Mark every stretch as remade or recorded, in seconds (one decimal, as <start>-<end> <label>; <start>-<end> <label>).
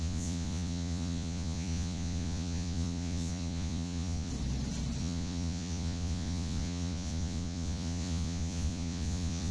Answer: 0.0-4.3 remade; 4.3-5.0 recorded; 5.0-9.5 remade